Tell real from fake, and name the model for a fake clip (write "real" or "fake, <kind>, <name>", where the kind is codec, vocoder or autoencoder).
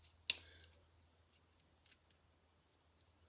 real